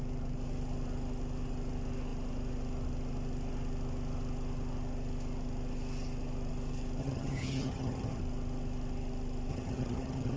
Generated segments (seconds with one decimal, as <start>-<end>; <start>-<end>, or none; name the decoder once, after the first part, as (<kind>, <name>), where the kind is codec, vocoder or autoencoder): 7.0-8.2 (vocoder, HiFi-GAN); 9.5-10.4